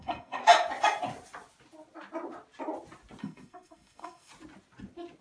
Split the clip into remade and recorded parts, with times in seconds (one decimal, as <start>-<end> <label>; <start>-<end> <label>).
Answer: 0.0-0.4 remade; 0.4-3.2 recorded; 3.2-4.3 remade; 4.3-5.2 recorded